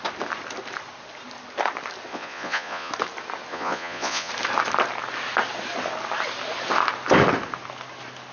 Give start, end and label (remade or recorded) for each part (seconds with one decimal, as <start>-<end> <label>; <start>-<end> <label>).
0.0-2.1 recorded; 2.1-2.9 remade; 2.9-3.5 recorded; 3.5-4.3 remade; 4.3-8.3 recorded